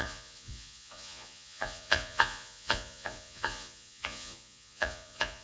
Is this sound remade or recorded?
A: remade